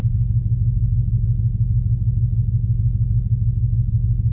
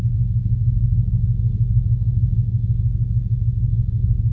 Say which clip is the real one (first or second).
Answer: first